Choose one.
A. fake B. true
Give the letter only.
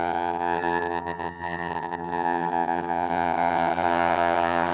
A